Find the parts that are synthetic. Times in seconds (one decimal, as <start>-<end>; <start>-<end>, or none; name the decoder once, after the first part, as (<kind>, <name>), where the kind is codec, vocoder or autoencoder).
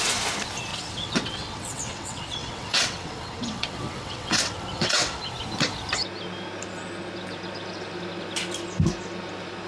0.7-5.3 (vocoder, WaveNeXt)